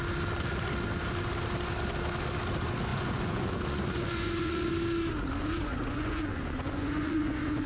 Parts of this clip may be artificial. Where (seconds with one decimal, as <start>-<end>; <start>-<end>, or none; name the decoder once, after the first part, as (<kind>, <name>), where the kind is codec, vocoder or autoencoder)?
2.9-4.7 (vocoder, Vocos); 5.4-7.7